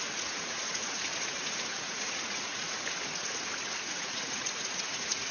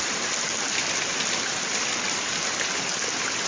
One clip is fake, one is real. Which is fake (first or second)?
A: first